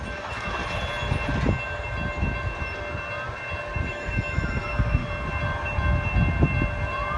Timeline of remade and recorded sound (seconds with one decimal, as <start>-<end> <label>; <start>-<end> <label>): 0.0-0.6 remade; 0.6-3.9 recorded; 3.9-5.0 remade; 5.0-7.2 recorded

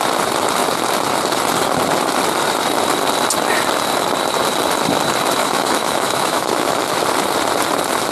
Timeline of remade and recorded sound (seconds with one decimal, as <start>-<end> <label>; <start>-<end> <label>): 0.0-5.4 recorded; 5.4-7.0 remade; 7.0-8.1 recorded

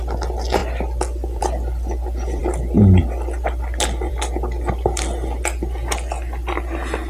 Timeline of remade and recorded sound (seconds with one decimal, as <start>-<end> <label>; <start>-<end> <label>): 0.0-7.1 recorded

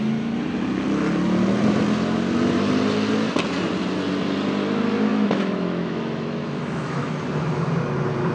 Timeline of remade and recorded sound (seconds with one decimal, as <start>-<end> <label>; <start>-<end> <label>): 0.0-5.1 recorded; 5.1-7.1 remade; 7.1-8.3 recorded

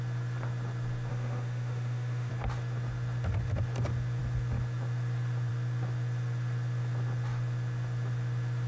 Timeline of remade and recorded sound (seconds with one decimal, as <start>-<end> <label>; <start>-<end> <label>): 0.0-1.1 recorded; 1.1-2.3 remade; 2.3-8.7 recorded

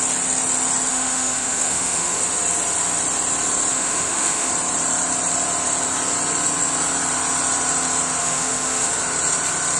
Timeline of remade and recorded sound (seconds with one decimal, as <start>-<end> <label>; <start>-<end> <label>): 0.0-0.9 recorded; 0.9-2.2 remade; 2.2-3.7 recorded; 3.7-4.5 remade; 4.5-8.2 recorded; 8.2-9.0 remade; 9.0-9.8 recorded